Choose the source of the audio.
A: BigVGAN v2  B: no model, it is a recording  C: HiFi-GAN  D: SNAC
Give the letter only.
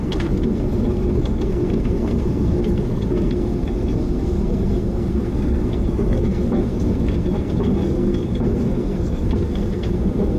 D